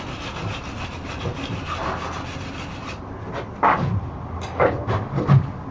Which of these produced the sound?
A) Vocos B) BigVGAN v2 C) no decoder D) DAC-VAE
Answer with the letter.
C